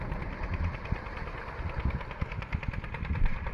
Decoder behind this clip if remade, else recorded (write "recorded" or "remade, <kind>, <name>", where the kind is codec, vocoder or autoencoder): recorded